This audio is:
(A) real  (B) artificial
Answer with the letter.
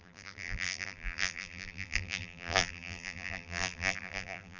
B